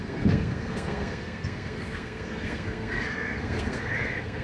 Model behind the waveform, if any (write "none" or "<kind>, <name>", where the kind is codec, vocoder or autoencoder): codec, SNAC